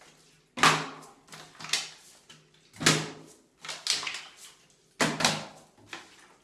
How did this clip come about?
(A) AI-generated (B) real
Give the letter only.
B